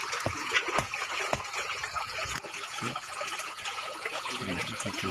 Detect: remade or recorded remade